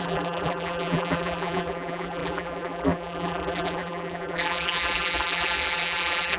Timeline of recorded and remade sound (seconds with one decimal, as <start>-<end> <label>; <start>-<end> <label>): 0.0-6.4 remade